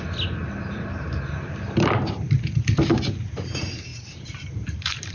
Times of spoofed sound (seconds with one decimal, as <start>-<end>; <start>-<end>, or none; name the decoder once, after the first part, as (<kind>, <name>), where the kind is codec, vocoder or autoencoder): 0.4-2.0 (vocoder, BigVGAN v2); 3.9-5.1